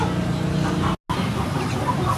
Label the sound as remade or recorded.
recorded